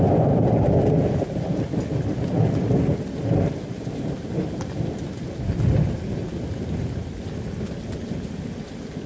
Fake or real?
real